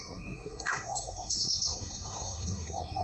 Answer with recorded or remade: remade